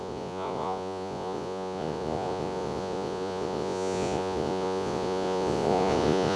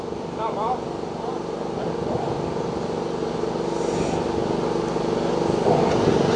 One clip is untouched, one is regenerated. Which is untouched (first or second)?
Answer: second